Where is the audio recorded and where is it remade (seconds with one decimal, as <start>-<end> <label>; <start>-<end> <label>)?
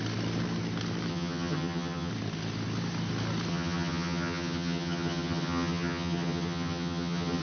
0.0-1.1 recorded; 1.1-2.1 remade; 2.1-3.5 recorded; 3.5-7.4 remade